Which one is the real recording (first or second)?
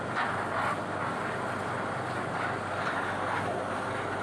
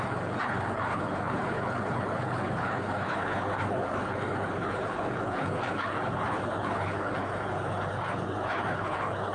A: first